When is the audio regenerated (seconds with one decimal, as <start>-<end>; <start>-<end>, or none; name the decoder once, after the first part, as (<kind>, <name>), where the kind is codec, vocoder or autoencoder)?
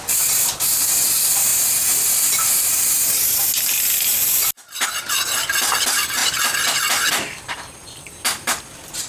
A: none